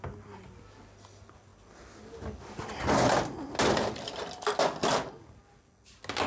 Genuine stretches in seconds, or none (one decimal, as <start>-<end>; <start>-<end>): 0.0-6.3